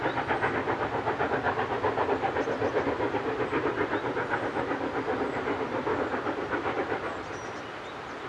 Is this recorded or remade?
recorded